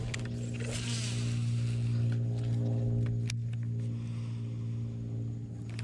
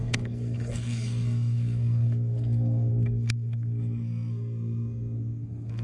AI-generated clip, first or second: second